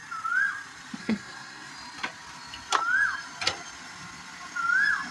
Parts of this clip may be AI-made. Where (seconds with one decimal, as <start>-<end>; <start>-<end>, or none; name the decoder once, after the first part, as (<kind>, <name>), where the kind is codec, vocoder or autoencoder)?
1.0-1.7 (codec, SNAC)